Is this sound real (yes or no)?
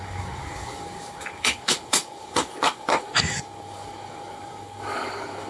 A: no